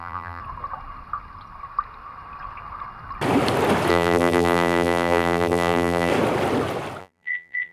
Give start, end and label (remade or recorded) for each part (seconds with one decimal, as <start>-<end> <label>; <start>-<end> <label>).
0.0-0.4 remade; 0.4-3.9 recorded; 3.9-6.1 remade; 6.1-7.0 recorded; 7.0-7.7 remade

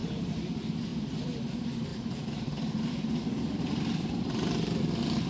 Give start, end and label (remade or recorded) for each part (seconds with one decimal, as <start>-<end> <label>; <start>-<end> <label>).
0.0-0.5 remade; 0.5-0.9 recorded; 0.9-1.5 remade; 1.5-1.9 recorded; 1.9-2.5 remade; 2.5-5.3 recorded

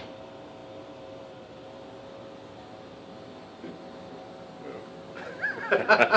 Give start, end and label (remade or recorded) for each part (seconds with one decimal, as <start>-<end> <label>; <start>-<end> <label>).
0.0-6.2 recorded

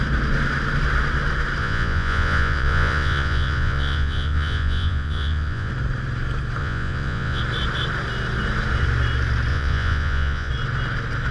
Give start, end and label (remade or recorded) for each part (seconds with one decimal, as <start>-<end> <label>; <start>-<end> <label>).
0.0-1.6 recorded; 1.6-5.7 remade; 5.7-6.6 recorded; 6.6-7.4 remade; 7.4-9.5 recorded; 9.5-10.5 remade; 10.5-11.3 recorded

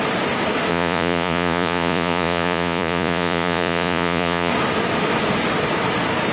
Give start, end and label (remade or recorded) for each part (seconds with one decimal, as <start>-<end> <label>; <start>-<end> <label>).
0.0-0.7 recorded; 0.7-4.5 remade; 4.5-6.3 recorded

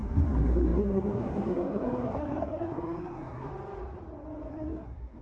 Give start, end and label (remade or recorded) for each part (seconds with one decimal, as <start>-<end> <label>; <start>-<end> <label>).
0.0-3.5 remade; 3.5-4.5 recorded; 4.5-5.2 remade

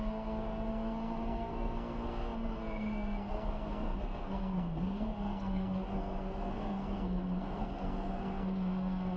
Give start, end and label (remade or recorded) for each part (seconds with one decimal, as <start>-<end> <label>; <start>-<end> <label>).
0.0-9.2 remade

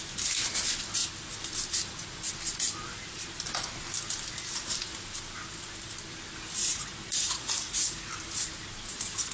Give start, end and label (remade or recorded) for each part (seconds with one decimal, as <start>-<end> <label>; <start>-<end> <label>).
0.0-6.6 recorded; 6.6-8.1 remade; 8.1-9.3 recorded